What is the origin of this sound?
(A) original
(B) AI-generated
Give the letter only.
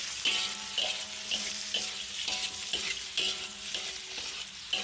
A